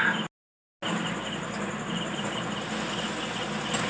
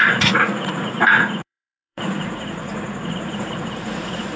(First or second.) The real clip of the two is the first